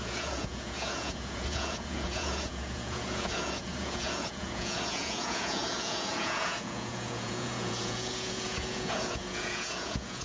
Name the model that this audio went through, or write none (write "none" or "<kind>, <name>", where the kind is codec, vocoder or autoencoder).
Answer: vocoder, Vocos